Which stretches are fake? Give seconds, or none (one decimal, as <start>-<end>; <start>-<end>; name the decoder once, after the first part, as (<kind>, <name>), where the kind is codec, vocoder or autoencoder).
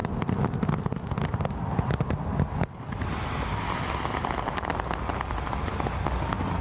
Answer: none